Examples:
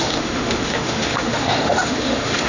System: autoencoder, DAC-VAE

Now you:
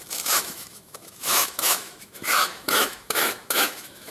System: autoencoder, DAC-VAE